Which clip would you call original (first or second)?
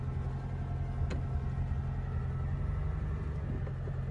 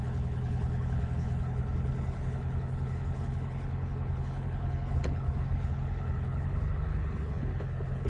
first